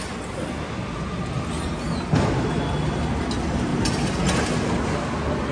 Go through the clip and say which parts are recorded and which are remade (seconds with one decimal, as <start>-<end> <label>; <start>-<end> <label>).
0.0-5.5 recorded